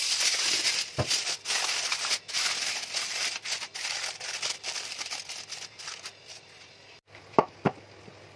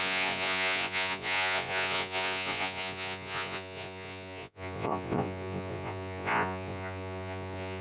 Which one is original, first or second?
first